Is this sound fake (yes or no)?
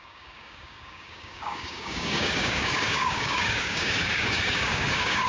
yes